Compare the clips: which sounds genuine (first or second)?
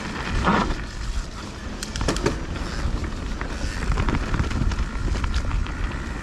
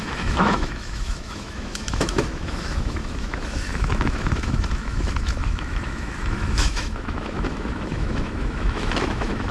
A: first